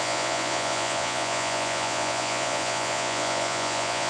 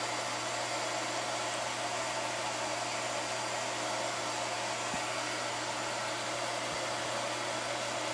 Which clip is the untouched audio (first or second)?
second